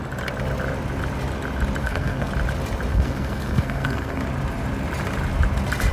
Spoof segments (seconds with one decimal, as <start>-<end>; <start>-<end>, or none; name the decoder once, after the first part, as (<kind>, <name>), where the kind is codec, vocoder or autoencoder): 1.8-2.3 (codec, SNAC); 2.9-4.2